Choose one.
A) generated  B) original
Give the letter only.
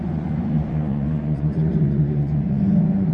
A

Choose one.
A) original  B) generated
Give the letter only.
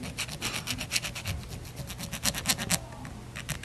A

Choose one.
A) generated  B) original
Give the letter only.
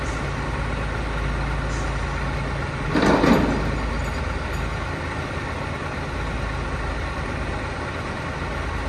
B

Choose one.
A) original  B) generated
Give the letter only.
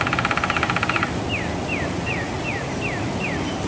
A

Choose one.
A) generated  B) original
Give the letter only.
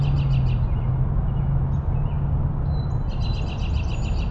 B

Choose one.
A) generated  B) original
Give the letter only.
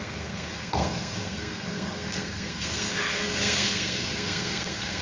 A